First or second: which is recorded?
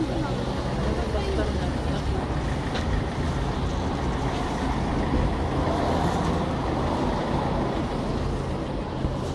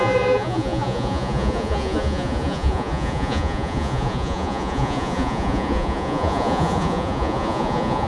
first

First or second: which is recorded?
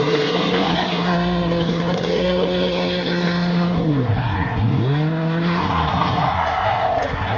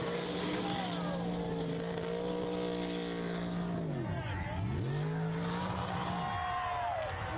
second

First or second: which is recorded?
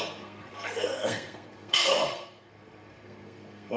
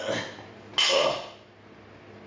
second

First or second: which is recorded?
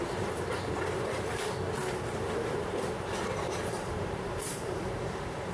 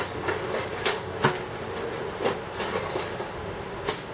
second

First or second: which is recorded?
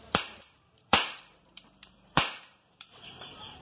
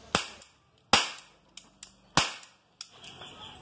second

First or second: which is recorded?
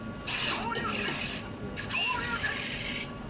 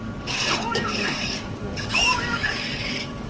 first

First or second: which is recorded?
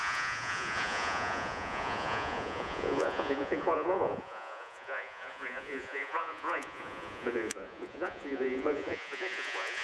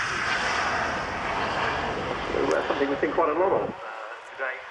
second